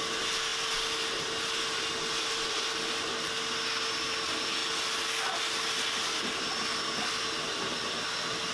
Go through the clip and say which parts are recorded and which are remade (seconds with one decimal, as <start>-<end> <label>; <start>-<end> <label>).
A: 0.0-8.5 recorded